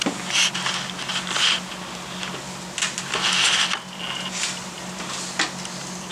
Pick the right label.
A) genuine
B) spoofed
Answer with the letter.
A